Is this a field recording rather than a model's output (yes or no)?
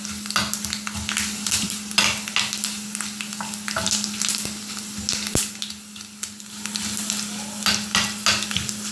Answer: yes